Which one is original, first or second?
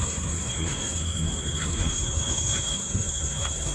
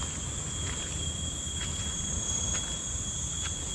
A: second